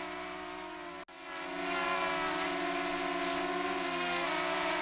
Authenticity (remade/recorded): recorded